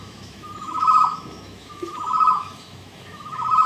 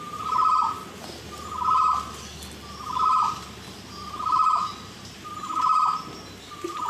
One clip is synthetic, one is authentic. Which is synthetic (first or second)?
first